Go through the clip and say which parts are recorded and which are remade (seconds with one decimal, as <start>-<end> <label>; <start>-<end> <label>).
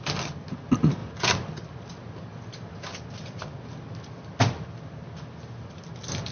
0.0-6.3 recorded